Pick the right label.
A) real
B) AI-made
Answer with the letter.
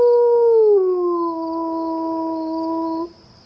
A